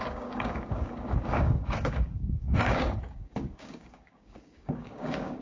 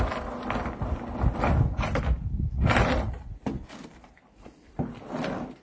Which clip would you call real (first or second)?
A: second